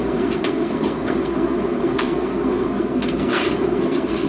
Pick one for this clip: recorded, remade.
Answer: remade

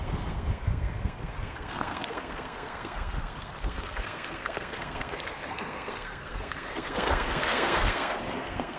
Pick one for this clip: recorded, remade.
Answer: remade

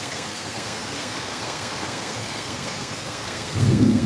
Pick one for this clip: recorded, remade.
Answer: remade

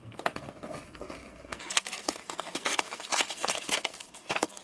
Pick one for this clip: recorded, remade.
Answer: remade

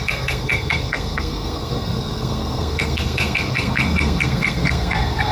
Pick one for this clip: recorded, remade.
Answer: remade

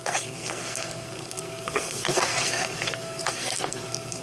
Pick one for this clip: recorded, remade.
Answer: remade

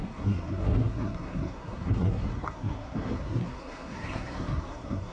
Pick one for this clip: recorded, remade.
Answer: remade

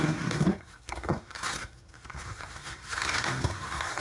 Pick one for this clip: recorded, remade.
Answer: remade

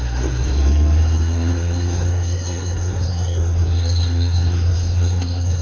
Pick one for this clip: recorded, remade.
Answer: remade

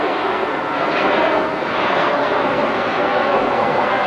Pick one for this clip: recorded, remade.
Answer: remade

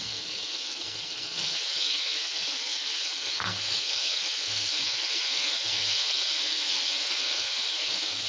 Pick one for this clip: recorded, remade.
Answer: remade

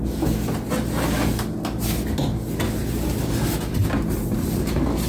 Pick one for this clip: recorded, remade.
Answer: recorded